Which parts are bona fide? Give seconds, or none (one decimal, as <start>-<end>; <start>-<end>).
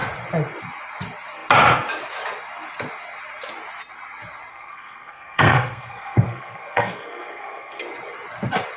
0.0-4.5; 7.8-8.8